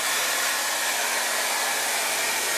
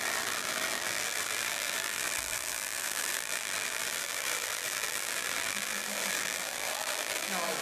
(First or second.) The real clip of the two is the first